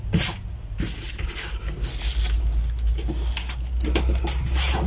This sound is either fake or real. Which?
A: real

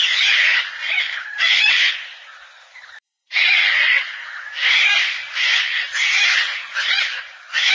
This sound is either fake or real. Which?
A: real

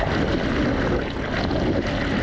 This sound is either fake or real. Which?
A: real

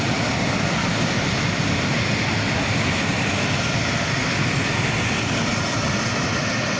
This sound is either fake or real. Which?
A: real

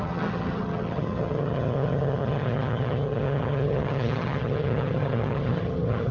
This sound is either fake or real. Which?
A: fake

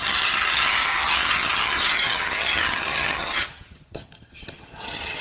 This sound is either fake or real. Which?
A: fake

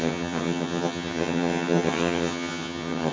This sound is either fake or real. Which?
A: fake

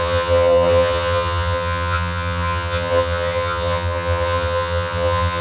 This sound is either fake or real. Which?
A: fake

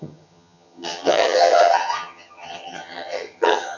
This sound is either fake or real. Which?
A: fake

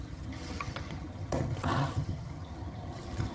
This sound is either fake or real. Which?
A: fake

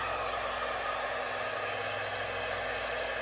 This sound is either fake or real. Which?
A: real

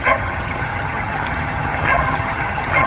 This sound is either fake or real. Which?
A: fake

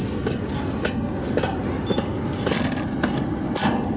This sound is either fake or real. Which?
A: real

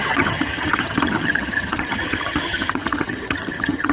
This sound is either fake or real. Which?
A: fake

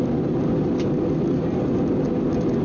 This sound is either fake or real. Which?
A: real